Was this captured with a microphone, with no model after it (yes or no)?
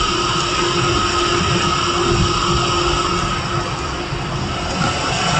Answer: yes